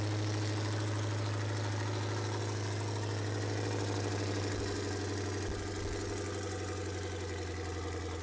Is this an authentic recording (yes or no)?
yes